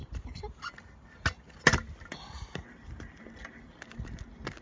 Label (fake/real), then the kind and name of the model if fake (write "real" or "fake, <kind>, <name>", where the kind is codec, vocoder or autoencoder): real